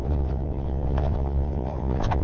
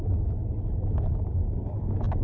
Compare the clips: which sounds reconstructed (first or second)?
first